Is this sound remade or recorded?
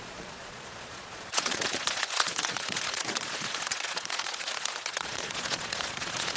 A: remade